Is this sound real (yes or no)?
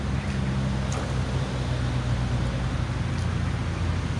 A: yes